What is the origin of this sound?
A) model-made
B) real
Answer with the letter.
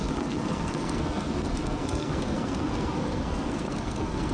A